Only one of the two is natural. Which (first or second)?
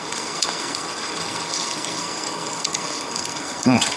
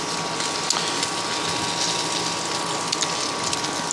second